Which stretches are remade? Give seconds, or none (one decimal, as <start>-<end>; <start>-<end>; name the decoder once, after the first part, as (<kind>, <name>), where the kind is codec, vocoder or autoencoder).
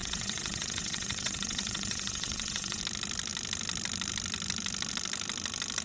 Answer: 0.0-2.8 (vocoder, WaveNeXt)